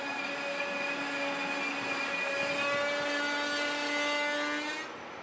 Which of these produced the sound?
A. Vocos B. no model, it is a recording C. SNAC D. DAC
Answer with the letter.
B